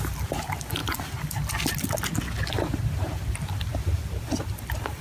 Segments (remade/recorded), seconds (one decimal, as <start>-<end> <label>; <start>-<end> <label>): 0.0-5.0 recorded